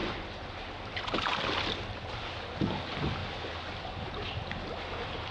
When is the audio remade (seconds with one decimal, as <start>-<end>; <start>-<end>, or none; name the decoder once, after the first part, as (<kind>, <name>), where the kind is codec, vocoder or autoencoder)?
none